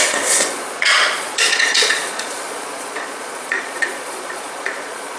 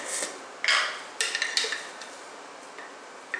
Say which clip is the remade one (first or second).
first